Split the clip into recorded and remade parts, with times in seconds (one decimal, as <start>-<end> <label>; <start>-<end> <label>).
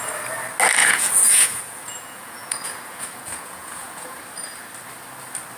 0.0-0.8 recorded; 0.8-4.2 remade; 4.2-5.6 recorded